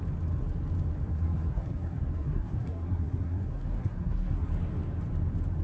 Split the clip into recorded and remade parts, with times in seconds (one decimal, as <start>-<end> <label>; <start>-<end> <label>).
0.0-1.1 recorded; 1.1-4.5 remade; 4.5-5.6 recorded